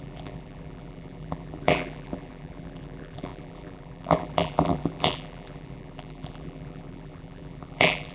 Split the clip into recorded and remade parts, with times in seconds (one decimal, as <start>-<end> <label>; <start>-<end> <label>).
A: 0.0-8.1 remade